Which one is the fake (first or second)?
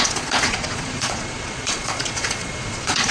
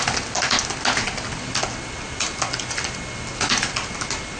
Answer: first